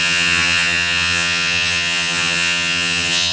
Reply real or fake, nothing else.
fake